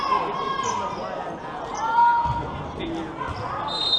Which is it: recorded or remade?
recorded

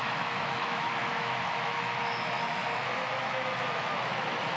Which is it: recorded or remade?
remade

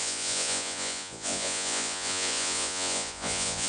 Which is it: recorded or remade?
remade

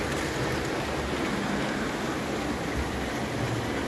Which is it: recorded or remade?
recorded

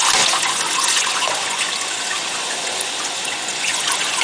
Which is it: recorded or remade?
remade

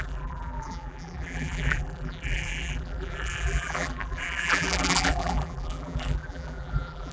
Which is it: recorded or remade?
remade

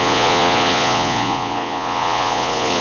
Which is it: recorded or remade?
remade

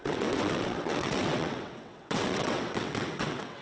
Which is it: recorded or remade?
remade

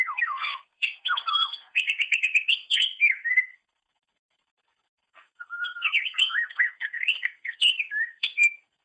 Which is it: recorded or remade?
remade